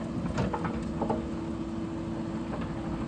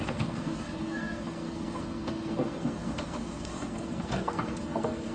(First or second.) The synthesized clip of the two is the second